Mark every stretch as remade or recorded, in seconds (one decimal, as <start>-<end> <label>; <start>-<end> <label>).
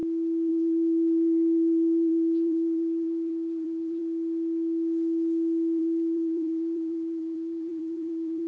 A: 0.0-0.5 recorded; 0.5-4.0 remade; 4.0-5.8 recorded; 5.8-8.5 remade